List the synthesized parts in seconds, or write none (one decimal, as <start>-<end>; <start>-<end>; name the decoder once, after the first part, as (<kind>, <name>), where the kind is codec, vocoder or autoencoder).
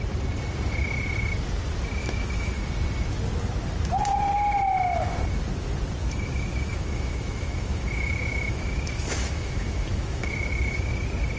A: 2.0-2.6 (autoencoder, DAC-VAE); 6.0-10.9